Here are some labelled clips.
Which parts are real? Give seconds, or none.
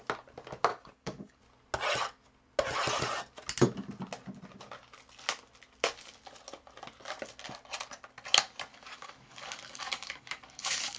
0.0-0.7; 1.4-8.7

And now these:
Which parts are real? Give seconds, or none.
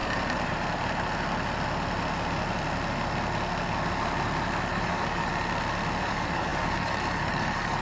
0.0-4.7; 5.3-6.0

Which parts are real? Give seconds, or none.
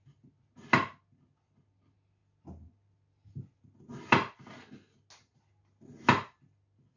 0.0-7.0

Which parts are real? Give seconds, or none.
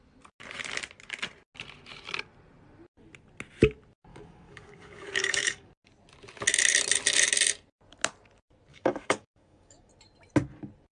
0.0-4.1; 5.7-8.7; 9.9-10.9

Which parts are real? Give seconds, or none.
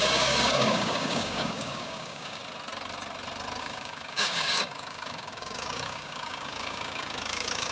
2.4-3.6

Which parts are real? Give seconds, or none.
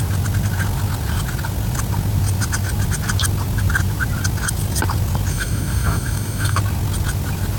0.0-5.3; 6.6-7.6